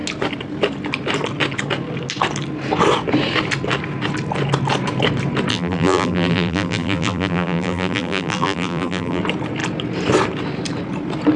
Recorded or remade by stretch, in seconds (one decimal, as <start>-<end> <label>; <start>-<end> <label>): 0.0-5.5 recorded; 5.5-9.2 remade; 9.2-11.4 recorded